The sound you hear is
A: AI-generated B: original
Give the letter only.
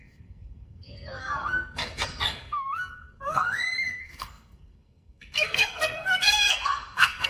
A